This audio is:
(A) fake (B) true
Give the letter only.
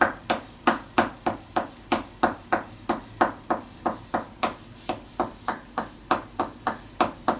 B